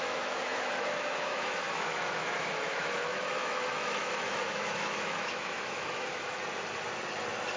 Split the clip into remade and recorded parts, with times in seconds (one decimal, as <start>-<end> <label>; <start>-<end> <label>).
0.0-6.4 remade; 6.4-7.6 recorded